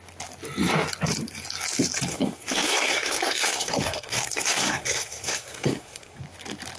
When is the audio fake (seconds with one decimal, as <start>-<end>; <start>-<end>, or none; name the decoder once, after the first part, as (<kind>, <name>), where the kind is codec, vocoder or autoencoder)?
2.1-6.2 (codec, SNAC)